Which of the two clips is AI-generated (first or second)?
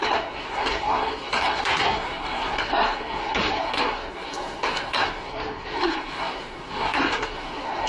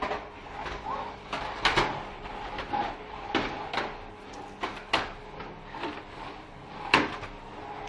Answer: first